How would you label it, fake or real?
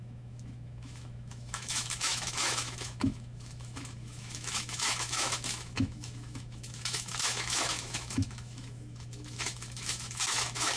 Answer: fake